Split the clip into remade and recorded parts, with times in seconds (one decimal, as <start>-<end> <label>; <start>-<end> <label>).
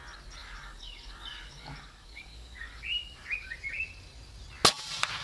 0.0-0.4 recorded; 0.4-3.5 remade; 3.5-5.2 recorded